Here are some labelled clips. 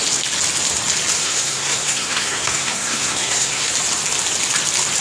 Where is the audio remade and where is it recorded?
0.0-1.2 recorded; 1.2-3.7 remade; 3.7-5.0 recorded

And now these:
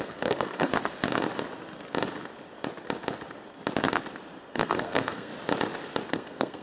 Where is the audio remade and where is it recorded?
0.0-0.7 remade; 0.7-4.5 recorded; 4.5-5.3 remade; 5.3-6.1 recorded; 6.1-6.6 remade